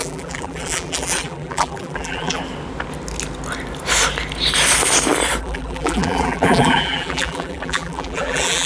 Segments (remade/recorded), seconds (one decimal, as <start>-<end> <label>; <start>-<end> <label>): 0.0-2.4 remade; 2.4-5.4 recorded; 5.4-8.7 remade